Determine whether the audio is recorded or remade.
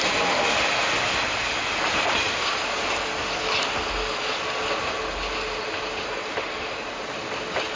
recorded